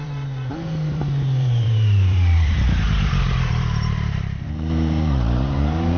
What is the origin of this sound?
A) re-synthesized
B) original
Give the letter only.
A